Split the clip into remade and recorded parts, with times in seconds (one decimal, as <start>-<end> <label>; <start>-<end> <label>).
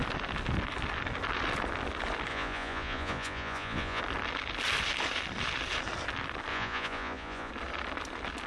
0.0-2.3 recorded; 2.3-4.0 remade; 4.0-6.5 recorded; 6.5-7.5 remade; 7.5-8.5 recorded